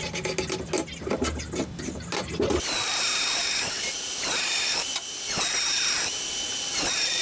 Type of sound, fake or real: real